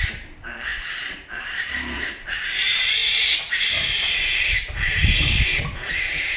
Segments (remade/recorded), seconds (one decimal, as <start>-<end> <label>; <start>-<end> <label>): 0.0-6.4 remade